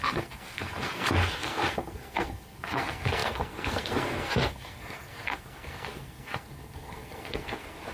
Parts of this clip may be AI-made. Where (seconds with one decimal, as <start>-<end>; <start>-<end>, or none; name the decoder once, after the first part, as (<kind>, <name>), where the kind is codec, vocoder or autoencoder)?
0.0-7.9 (codec, SNAC)